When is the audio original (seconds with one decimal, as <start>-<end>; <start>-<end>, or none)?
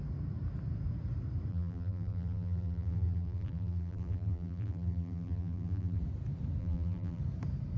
0.0-1.5; 6.0-6.6; 7.2-7.8